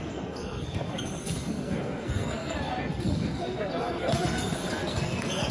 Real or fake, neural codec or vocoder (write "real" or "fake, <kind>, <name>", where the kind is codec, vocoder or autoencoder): fake, codec, SNAC